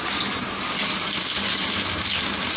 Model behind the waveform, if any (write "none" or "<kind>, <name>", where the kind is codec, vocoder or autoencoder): none